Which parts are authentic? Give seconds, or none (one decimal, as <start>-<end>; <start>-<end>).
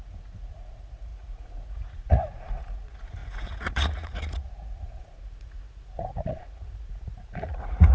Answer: none